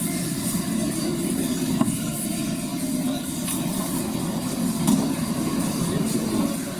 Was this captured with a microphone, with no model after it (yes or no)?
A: yes